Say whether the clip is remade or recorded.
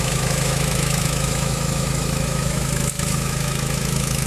remade